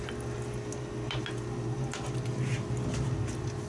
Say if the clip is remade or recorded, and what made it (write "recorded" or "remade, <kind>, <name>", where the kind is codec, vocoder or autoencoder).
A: recorded